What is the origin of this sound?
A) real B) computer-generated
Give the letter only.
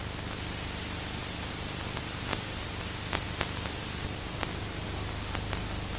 A